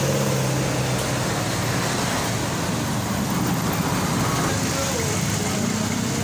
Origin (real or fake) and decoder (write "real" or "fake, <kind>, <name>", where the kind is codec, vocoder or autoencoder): real